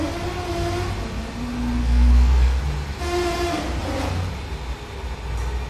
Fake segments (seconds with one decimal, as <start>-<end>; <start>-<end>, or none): 1.8-2.6